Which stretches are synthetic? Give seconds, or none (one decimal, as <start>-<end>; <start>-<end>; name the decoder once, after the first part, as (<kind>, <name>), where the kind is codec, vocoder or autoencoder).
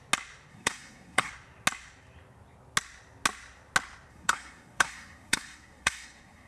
0.5-1.3 (codec, SNAC); 4.1-6.5